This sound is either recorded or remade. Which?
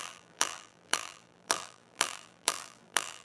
remade